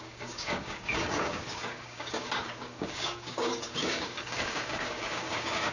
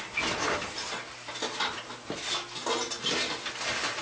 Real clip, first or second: second